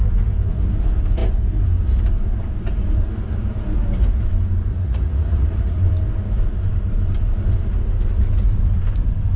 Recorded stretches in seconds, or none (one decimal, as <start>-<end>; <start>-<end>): 0.0-4.7; 5.9-9.4